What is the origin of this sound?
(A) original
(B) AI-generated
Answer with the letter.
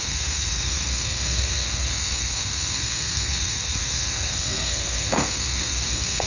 B